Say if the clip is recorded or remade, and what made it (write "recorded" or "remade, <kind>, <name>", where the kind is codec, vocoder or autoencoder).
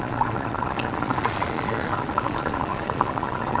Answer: remade, vocoder, Vocos